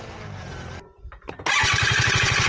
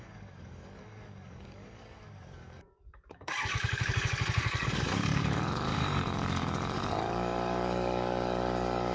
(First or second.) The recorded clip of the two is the first